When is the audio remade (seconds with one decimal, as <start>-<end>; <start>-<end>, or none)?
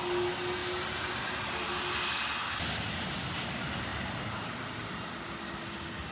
none